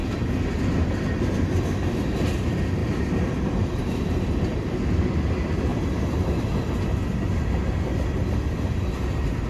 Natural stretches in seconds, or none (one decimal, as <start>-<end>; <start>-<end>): 0.0-2.8; 4.4-5.7; 6.3-9.5